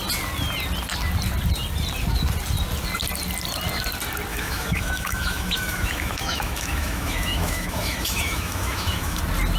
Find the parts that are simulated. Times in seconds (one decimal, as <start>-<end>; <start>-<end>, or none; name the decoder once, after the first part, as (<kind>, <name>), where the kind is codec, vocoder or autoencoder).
4.3-9.2 (autoencoder, DAC-VAE)